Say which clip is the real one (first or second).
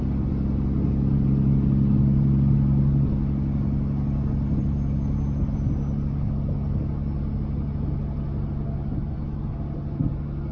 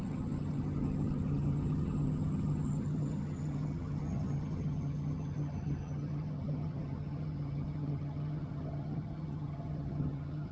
first